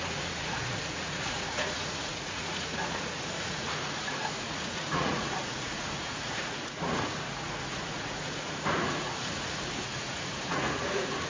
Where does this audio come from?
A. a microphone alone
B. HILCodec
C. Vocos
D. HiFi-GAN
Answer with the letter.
C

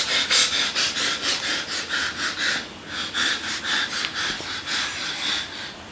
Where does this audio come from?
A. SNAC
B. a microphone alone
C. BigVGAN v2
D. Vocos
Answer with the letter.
B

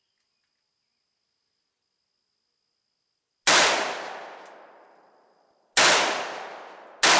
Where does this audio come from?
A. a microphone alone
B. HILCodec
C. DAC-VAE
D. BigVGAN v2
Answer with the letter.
A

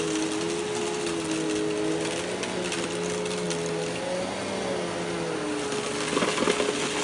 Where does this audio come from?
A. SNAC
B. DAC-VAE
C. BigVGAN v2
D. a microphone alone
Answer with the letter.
D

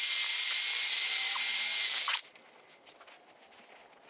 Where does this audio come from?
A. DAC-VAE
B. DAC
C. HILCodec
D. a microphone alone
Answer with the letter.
D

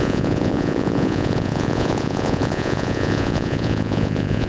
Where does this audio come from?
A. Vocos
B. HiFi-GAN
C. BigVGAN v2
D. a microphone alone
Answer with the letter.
A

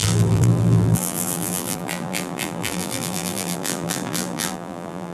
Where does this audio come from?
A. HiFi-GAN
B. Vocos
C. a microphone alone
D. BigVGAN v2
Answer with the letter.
D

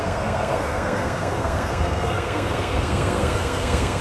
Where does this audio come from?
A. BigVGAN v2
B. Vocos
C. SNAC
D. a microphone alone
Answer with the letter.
C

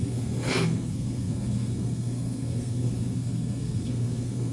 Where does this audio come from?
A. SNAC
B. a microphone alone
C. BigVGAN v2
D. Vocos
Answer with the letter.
A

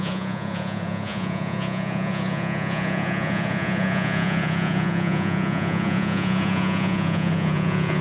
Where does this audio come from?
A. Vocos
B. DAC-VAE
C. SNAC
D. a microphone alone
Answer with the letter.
A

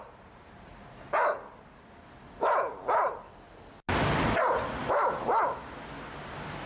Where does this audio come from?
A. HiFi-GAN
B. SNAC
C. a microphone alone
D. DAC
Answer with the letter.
C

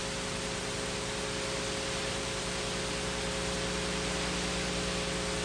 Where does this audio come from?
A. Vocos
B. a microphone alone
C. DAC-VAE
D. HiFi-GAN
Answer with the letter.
B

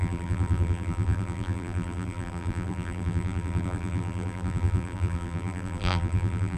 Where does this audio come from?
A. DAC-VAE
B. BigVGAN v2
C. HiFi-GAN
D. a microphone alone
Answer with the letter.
B